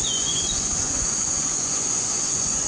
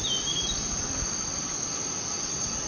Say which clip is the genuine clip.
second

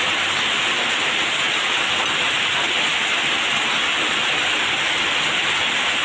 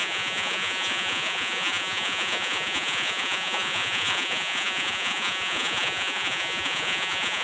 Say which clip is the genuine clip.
first